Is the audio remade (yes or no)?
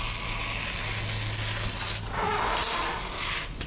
no